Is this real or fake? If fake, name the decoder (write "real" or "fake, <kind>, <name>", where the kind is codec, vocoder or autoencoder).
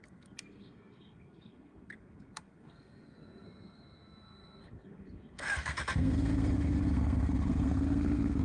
fake, codec, SNAC